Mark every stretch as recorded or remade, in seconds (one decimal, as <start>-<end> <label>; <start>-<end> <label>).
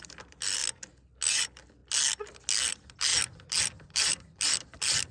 0.0-0.6 remade; 0.6-1.3 recorded; 1.3-1.8 remade; 1.8-2.7 recorded; 2.7-3.1 remade; 3.1-3.6 recorded; 3.6-5.1 remade